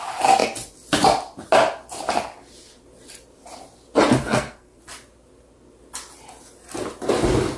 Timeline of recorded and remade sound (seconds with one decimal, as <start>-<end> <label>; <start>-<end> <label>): 0.0-4.2 recorded; 4.2-4.8 remade; 4.8-7.6 recorded